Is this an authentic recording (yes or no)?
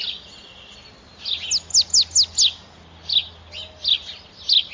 yes